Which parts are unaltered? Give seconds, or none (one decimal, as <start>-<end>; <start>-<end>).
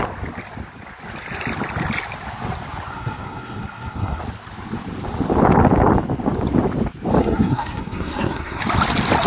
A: 0.0-2.9; 4.2-7.2; 8.6-9.3